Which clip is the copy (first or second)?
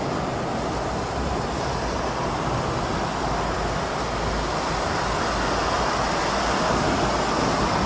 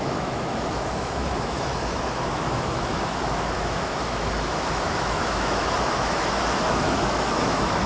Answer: second